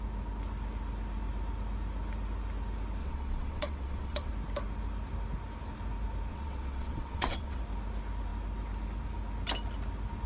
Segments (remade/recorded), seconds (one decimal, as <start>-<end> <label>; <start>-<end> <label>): 0.0-3.0 recorded; 3.0-4.3 remade; 4.3-6.3 recorded; 6.3-7.6 remade; 7.6-10.3 recorded